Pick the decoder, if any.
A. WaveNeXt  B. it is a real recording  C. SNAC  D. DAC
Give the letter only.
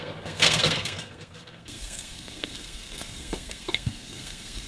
C